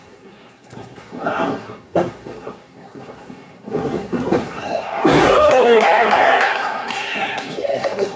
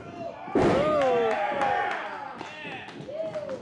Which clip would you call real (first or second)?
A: second